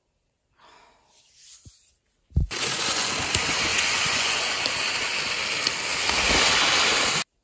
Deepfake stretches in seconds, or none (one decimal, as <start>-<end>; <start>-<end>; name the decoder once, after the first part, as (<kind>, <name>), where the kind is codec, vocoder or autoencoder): 2.4-3.1 (vocoder, Vocos); 3.7-4.6